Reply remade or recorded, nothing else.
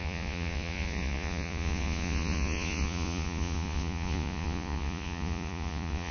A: remade